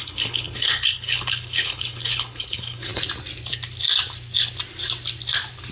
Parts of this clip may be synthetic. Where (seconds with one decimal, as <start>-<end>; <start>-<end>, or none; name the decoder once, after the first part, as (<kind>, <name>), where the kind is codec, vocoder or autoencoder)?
0.0-2.9 (codec, HILCodec)